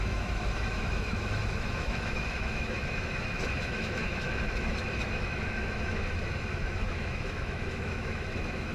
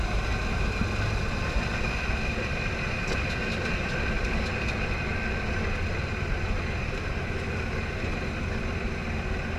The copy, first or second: first